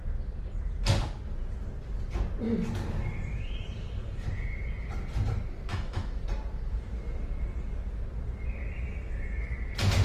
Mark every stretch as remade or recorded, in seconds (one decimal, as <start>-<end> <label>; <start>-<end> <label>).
0.0-5.7 recorded; 5.7-6.2 remade; 6.2-10.0 recorded